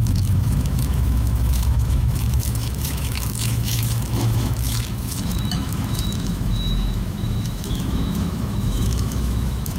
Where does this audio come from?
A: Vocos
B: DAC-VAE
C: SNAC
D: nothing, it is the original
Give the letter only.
B